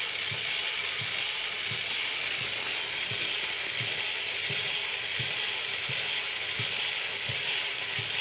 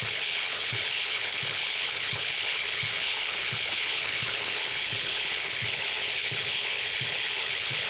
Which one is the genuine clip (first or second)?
first